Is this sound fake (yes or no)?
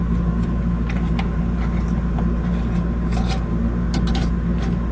no